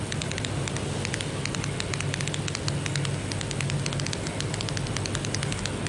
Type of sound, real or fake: real